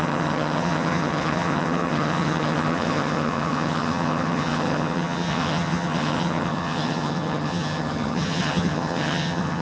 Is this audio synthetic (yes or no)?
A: yes